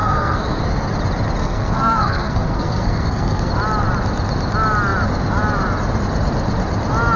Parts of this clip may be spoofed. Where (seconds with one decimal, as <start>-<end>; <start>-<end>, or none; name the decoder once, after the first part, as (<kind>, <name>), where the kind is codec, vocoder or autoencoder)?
0.0-0.6 (codec, SNAC); 1.4-3.5

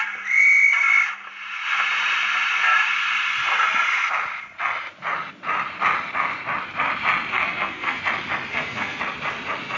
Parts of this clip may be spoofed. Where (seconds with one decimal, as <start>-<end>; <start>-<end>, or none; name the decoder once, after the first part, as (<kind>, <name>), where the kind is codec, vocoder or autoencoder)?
7.3-8.0 (codec, SNAC); 8.5-9.0